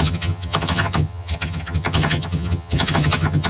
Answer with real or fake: fake